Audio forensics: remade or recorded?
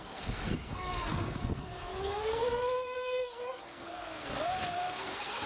remade